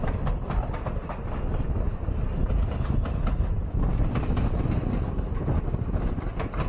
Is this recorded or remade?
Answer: recorded